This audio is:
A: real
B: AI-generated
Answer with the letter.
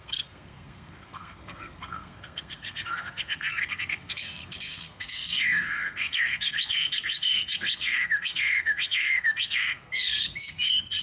B